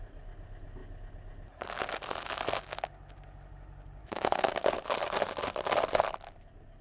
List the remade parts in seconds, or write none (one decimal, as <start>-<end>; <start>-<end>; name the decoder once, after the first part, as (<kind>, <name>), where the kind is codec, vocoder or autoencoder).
4.0-4.7 (autoencoder, DAC-VAE)